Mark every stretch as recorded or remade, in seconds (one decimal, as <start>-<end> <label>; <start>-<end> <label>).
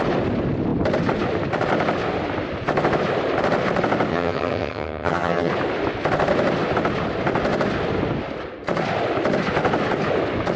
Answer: 0.0-4.1 recorded; 4.1-5.5 remade; 5.5-10.6 recorded